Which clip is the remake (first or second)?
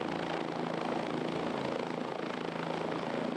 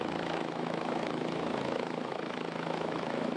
second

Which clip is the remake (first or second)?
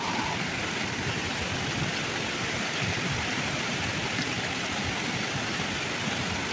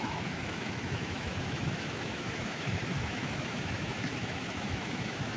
second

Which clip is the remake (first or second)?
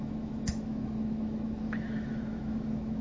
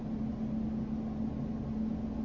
first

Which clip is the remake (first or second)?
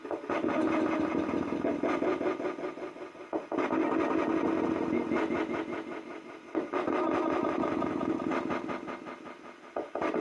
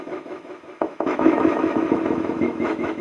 second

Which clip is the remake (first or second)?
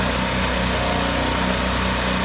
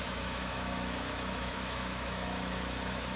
second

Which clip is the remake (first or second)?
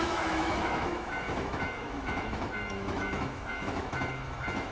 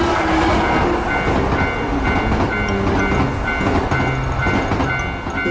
first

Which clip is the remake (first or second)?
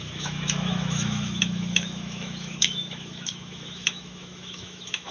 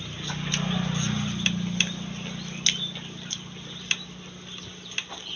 first